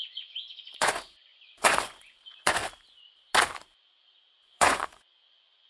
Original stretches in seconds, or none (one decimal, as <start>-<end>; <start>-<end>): 2.6-4.4